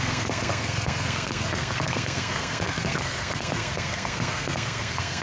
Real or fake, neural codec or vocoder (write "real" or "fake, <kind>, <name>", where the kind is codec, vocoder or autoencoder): fake, codec, SNAC